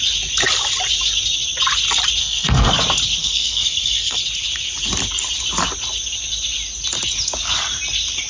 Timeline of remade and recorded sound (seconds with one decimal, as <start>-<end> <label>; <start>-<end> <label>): 0.0-2.2 recorded; 2.2-2.7 remade; 2.7-3.2 recorded; 3.2-4.2 remade; 4.2-8.3 recorded